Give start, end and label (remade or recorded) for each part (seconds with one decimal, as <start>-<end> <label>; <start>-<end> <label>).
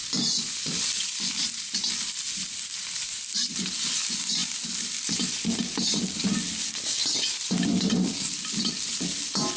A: 0.0-9.6 recorded